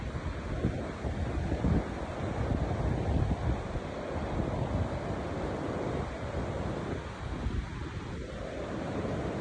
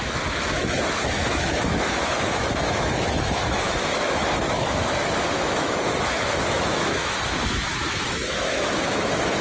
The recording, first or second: first